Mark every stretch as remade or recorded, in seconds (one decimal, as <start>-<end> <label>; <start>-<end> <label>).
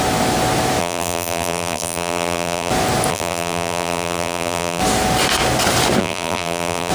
0.0-0.8 recorded; 0.8-2.7 remade; 2.7-3.1 recorded; 3.1-4.8 remade; 4.8-6.0 recorded; 6.0-6.9 remade